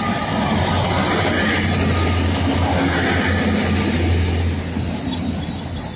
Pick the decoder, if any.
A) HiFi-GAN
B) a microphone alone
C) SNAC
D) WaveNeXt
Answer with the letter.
B